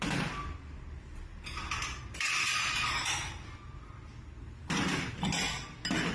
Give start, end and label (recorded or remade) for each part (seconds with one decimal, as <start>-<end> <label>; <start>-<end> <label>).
0.0-6.1 recorded